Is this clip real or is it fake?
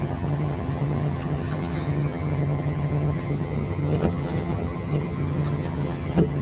fake